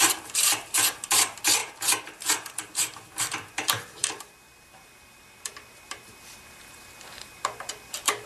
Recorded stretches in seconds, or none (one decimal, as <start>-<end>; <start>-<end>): none